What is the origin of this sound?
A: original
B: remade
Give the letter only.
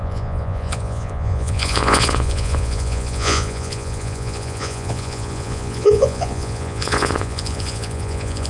B